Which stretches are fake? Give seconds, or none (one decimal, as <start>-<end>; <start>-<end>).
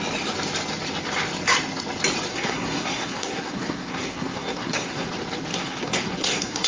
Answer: 2.3-5.1; 5.5-6.7